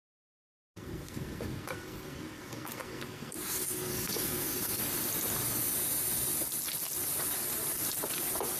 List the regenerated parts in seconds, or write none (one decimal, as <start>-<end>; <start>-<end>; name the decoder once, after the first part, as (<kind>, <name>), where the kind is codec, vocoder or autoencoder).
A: 0.0-4.8 (codec, SNAC)